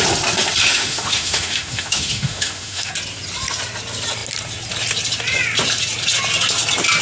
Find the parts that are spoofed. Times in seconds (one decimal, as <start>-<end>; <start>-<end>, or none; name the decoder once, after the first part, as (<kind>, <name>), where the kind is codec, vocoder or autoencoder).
0.6-2.9 (autoencoder, DAC-VAE)